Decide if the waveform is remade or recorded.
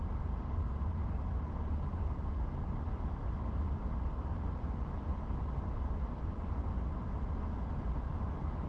recorded